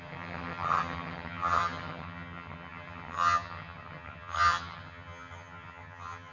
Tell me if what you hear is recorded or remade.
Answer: remade